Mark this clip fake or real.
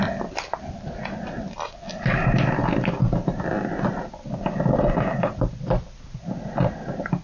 real